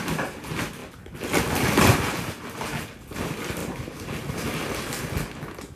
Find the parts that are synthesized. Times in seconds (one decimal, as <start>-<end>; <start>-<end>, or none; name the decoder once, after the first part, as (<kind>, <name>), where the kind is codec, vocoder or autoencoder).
none